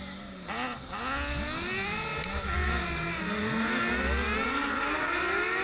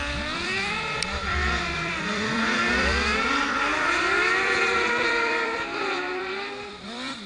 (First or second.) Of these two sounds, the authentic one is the first